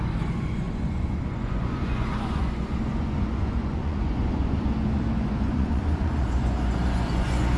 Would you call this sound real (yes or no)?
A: no